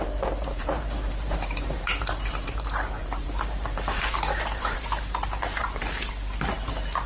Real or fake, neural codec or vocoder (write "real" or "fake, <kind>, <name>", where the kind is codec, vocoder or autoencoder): fake, vocoder, BigVGAN v2